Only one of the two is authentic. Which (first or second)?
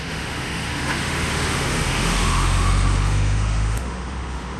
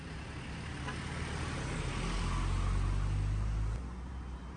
second